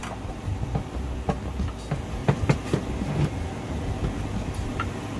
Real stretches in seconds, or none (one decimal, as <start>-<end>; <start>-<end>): 0.7-2.2; 3.0-5.2